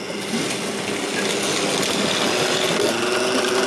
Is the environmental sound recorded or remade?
recorded